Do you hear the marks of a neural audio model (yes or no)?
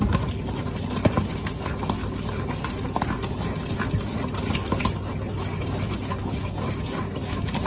no